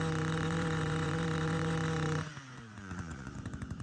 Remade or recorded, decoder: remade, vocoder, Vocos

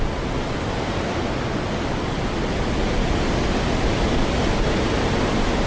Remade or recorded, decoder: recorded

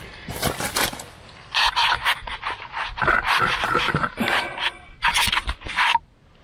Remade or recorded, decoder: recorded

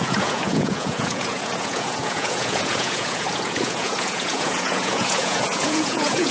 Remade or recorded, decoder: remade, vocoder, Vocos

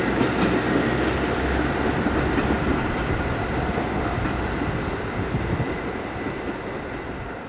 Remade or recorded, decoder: recorded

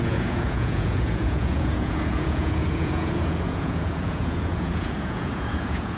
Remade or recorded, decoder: remade, vocoder, Vocos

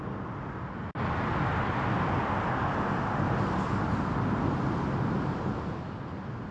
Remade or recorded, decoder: recorded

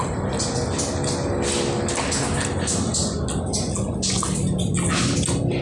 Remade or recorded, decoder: recorded